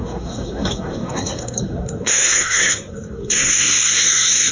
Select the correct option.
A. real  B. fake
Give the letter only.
B